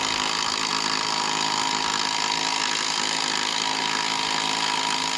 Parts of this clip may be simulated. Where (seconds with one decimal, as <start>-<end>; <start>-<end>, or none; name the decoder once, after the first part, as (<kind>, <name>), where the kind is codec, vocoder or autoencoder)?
none